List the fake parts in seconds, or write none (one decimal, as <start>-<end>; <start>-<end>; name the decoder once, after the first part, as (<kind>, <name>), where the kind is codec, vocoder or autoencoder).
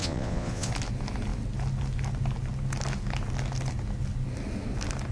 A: 0.0-0.7 (vocoder, Vocos)